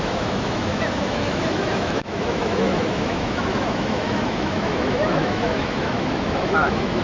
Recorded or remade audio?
remade